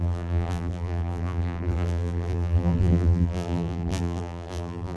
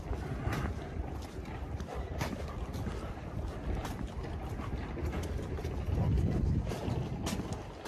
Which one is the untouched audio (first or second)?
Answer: second